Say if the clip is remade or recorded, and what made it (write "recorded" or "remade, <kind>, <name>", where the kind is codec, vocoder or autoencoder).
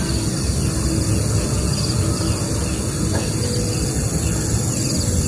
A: recorded